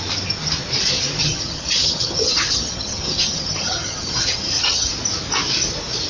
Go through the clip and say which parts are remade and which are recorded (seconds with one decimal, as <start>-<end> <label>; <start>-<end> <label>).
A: 0.0-1.2 recorded; 1.2-4.9 remade; 4.9-6.1 recorded